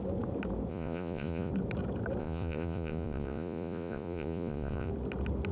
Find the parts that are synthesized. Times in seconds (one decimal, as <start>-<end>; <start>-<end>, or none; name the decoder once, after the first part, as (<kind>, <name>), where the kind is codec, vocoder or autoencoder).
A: 0.7-1.5 (vocoder, Vocos); 2.2-4.9